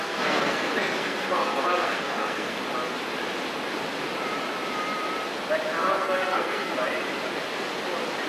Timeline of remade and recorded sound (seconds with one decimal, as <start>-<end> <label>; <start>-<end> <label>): 0.0-2.6 remade; 2.6-5.8 recorded; 5.8-6.7 remade; 6.7-8.3 recorded